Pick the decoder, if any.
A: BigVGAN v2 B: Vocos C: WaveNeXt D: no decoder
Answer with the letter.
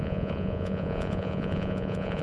B